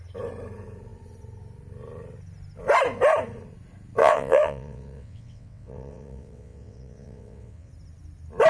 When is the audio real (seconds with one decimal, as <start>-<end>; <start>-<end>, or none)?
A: 0.0-4.0; 7.7-8.5